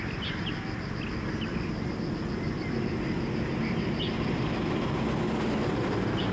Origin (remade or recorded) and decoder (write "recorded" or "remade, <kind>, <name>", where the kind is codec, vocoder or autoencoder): recorded